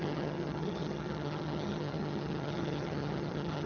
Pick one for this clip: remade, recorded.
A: remade